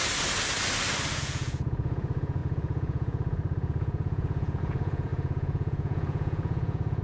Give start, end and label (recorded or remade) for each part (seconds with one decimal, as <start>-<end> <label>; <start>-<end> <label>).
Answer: 0.0-1.2 recorded; 1.2-7.0 remade